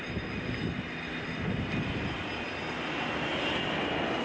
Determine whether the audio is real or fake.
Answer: real